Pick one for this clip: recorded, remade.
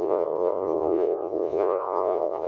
remade